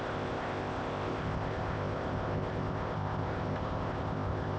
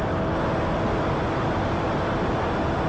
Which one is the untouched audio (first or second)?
second